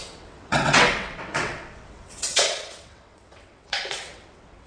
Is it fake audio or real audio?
fake